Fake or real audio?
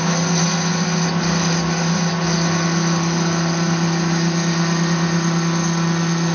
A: real